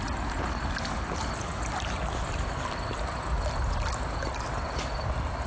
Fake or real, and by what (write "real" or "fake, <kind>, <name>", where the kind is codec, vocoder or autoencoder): real